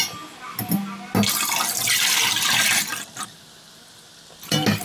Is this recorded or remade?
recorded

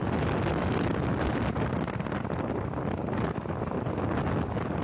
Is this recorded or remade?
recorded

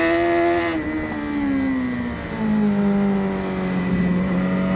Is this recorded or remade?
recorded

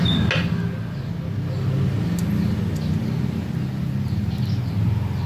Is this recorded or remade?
recorded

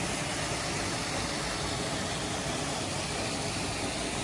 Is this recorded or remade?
recorded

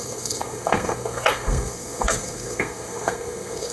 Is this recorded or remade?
remade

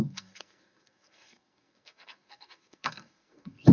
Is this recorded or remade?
remade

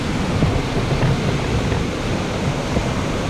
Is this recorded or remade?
recorded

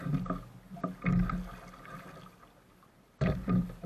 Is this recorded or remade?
recorded